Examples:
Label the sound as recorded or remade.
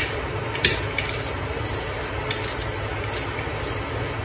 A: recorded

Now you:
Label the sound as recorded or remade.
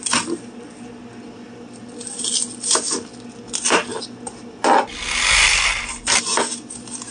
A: recorded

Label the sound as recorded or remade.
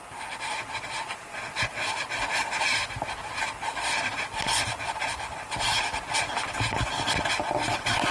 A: recorded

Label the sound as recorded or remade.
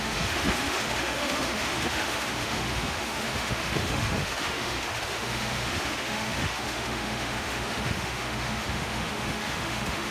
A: remade